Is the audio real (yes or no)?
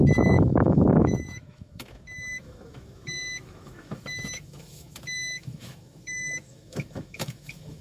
no